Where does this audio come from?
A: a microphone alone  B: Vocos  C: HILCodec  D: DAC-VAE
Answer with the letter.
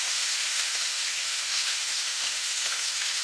D